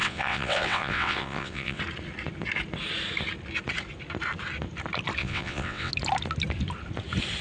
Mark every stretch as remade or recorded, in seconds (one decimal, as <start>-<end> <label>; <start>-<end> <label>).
0.0-1.8 remade; 1.8-5.2 recorded; 5.2-5.9 remade; 5.9-7.4 recorded